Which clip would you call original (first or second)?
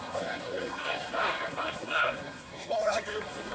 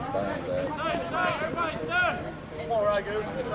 second